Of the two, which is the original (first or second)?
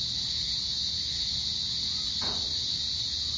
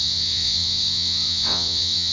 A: first